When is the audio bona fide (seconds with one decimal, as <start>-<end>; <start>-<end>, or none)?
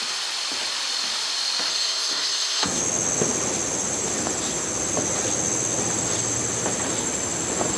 0.0-1.7; 2.8-7.8